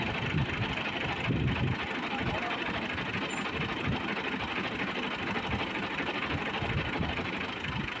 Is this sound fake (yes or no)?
no